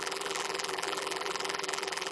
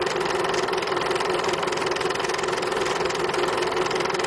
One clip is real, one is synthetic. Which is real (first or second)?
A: second